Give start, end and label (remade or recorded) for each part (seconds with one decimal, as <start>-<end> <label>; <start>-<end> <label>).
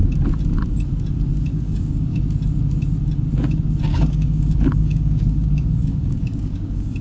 0.0-1.5 recorded; 1.5-2.2 remade; 2.2-3.9 recorded; 3.9-7.0 remade